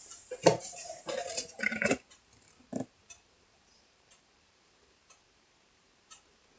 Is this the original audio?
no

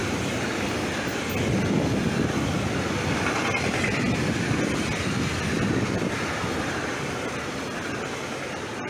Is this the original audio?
yes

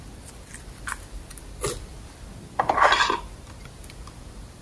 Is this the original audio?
yes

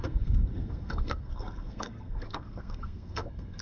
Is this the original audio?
no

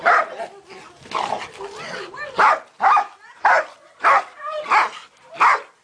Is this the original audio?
yes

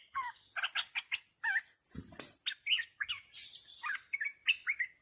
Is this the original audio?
yes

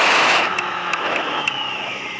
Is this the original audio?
no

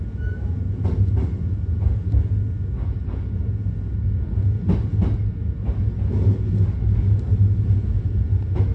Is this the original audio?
yes